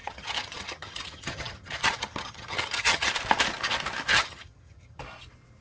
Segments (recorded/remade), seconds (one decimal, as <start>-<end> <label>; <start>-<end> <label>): 0.0-3.1 remade; 3.1-4.1 recorded; 4.1-5.0 remade; 5.0-5.6 recorded